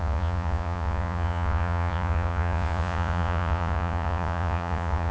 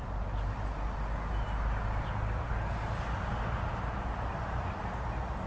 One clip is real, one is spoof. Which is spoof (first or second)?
first